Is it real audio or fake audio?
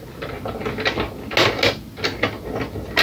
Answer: real